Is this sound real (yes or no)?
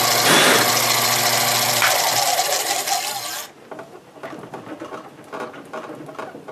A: yes